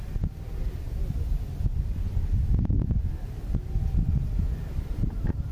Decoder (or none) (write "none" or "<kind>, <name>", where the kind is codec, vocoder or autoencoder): none